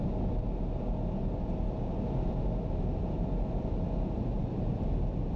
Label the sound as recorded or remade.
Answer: recorded